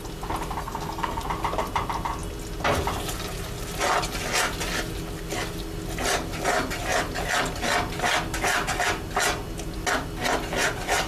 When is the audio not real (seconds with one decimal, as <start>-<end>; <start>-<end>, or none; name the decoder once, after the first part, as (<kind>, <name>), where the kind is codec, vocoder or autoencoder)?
0.6-1.2 (codec, SNAC)